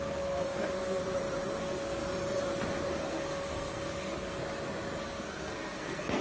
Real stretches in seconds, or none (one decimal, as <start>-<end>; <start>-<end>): 1.0-1.6; 2.0-2.9; 4.4-5.0

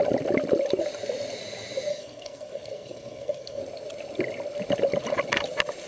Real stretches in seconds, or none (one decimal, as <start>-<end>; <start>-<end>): 0.0-1.9; 3.6-5.9

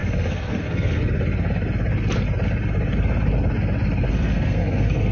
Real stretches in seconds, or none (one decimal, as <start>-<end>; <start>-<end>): 1.0-4.1

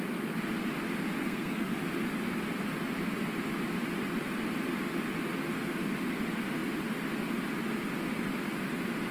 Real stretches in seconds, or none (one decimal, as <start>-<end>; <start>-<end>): 0.0-1.2; 1.8-9.1

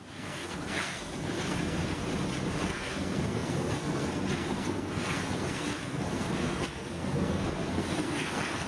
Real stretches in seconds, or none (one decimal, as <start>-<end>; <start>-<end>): 2.0-2.5

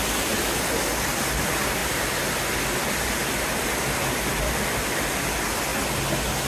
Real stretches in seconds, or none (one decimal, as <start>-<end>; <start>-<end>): 0.0-6.5

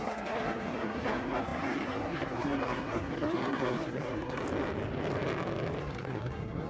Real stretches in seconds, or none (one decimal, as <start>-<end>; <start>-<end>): 4.4-5.8

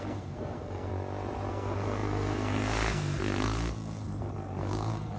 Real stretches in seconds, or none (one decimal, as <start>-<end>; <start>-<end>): 0.9-1.5